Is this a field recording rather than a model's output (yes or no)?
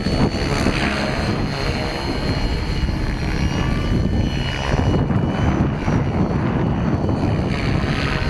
yes